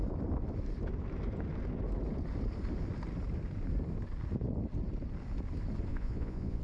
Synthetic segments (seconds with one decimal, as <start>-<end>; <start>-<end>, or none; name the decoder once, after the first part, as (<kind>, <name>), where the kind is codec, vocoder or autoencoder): 5.9-6.6 (vocoder, Vocos)